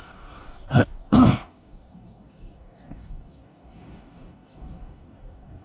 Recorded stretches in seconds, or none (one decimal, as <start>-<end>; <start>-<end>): none